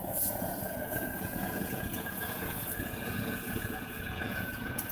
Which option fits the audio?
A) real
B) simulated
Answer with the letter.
B